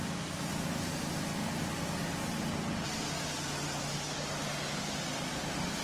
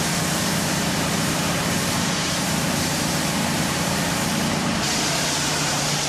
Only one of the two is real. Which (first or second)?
first